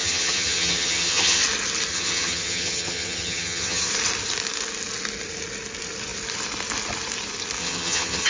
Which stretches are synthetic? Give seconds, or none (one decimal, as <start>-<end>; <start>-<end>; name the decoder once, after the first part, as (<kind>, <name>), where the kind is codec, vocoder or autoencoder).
0.0-1.4 (vocoder, HiFi-GAN); 1.9-3.9; 7.6-8.3